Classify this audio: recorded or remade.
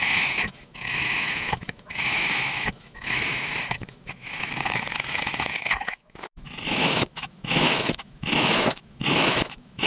remade